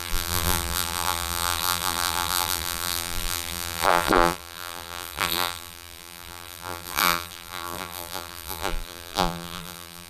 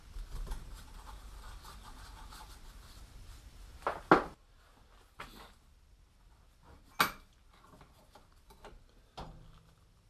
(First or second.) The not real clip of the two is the first